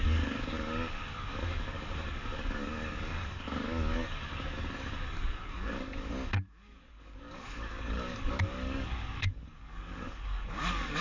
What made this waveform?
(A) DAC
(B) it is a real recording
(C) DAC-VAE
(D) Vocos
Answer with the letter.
A